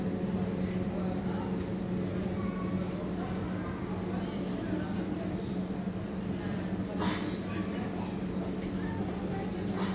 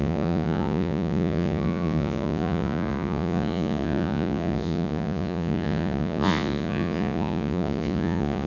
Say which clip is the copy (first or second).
second